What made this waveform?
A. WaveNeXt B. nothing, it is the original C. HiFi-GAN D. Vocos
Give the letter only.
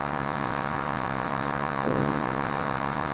A